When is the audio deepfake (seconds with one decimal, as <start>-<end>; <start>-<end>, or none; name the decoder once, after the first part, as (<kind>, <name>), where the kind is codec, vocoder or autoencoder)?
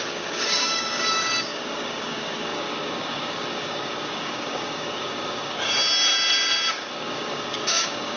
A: 0.0-5.8 (codec, DAC); 6.7-8.2